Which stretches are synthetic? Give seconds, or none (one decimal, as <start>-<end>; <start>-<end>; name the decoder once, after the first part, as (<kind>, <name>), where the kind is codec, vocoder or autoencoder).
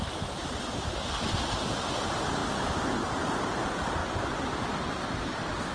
none